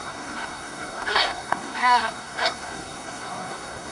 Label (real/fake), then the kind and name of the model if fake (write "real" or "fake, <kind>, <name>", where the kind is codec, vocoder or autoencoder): fake, codec, SNAC